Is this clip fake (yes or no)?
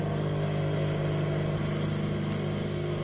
no